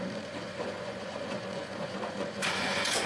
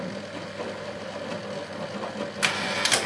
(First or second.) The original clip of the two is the second